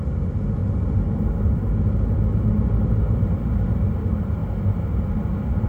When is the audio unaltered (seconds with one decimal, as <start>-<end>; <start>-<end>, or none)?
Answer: 0.0-5.7